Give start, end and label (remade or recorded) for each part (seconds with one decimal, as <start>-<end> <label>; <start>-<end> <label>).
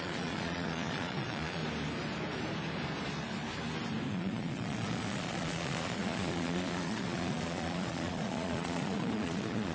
0.0-1.6 remade; 1.6-4.1 recorded; 4.1-9.7 remade